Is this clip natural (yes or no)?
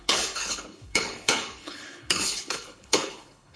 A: no